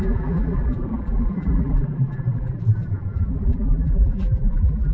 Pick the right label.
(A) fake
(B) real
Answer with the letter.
A